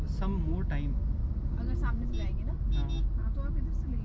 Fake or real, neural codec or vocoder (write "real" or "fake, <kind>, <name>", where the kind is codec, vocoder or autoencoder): real